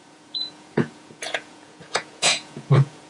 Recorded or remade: remade